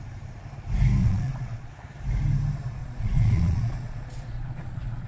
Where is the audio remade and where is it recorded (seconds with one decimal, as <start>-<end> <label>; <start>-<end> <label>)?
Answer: 0.0-1.0 recorded; 1.0-1.7 remade; 1.7-2.8 recorded; 2.8-5.1 remade